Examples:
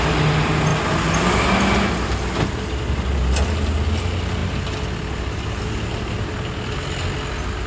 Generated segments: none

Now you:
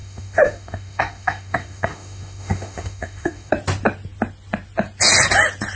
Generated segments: 0.0-3.5 (autoencoder, DAC-VAE)